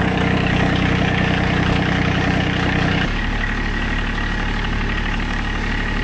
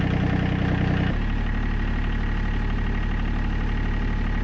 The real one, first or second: second